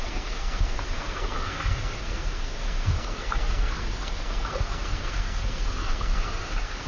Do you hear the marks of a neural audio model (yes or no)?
yes